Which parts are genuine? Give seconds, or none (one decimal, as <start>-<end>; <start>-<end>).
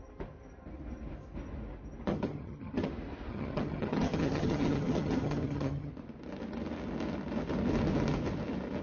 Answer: 0.0-2.1; 2.9-3.3; 5.9-8.8